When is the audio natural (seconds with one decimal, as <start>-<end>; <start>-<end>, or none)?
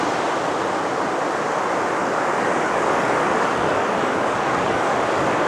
0.0-2.0